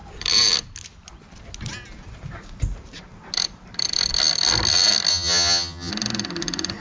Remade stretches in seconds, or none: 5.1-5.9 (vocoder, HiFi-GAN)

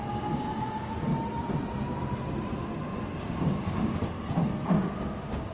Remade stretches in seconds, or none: 0.0-1.1 (codec, DAC); 3.2-4.0; 4.7-5.5

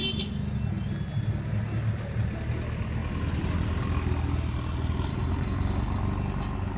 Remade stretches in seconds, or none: 5.1-6.0 (codec, DAC)

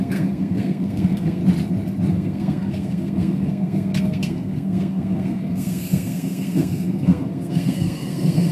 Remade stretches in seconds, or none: 0.0-1.4 (codec, SNAC); 2.1-8.5

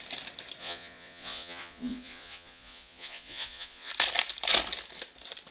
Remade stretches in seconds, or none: 0.6-3.9 (vocoder, Vocos)

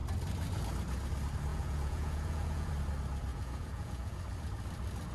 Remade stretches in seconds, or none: 1.5-2.7 (vocoder, Vocos); 3.3-4.2

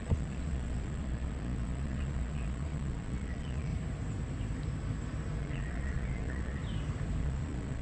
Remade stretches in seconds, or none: 0.0-3.7 (vocoder, Vocos); 5.4-6.6; 7.2-7.8

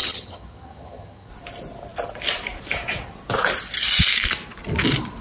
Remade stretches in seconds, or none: 0.0-1.3 (vocoder, HiFi-GAN)